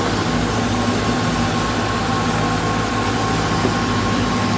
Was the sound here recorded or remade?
recorded